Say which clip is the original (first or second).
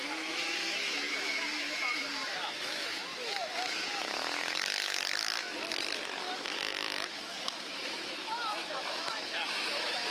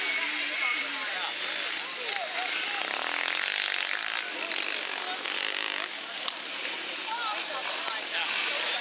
second